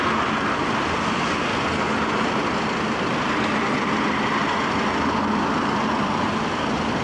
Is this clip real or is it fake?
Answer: real